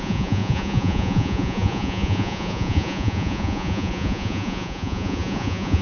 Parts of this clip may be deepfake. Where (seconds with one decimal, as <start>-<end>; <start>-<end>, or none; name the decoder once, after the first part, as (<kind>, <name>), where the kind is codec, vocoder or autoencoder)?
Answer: 0.0-5.8 (vocoder, Vocos)